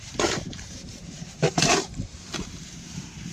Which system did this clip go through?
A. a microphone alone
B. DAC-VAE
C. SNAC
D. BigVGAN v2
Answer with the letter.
D